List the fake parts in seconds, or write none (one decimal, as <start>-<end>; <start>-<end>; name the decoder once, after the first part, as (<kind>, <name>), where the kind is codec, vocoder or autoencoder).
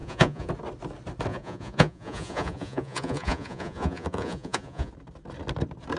0.0-0.5 (vocoder, Vocos); 1.3-4.9